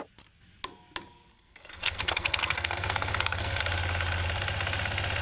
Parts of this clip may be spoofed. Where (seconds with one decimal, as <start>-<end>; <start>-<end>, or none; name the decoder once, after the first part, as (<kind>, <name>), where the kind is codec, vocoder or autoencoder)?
1.3-3.6 (codec, SNAC)